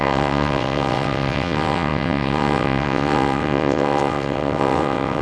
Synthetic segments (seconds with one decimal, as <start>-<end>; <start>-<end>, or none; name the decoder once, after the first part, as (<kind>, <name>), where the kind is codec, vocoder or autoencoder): 0.0-5.2 (vocoder, WaveNeXt)